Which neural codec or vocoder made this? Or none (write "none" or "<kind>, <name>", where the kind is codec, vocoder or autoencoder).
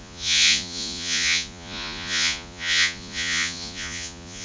vocoder, Vocos